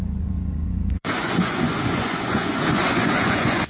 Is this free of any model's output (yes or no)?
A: no